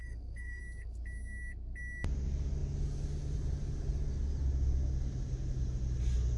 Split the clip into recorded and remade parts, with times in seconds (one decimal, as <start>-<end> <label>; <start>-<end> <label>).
0.0-0.6 remade; 0.6-6.4 recorded